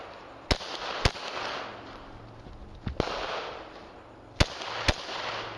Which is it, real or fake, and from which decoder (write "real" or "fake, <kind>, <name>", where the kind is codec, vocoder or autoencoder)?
real